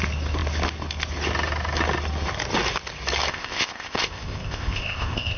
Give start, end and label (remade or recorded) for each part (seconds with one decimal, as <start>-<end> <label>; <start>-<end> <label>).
0.0-3.3 recorded; 3.3-5.4 remade